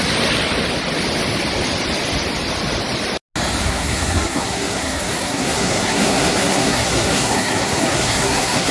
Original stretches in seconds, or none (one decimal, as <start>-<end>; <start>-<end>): 0.0-3.6